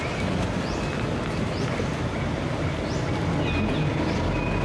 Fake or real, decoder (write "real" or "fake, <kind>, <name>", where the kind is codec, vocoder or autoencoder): real